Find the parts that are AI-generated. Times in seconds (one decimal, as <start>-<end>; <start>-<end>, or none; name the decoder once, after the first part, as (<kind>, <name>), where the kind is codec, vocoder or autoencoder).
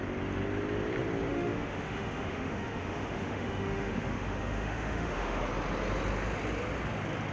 1.3-5.4 (autoencoder, DAC-VAE)